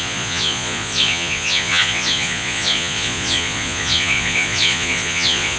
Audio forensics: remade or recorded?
remade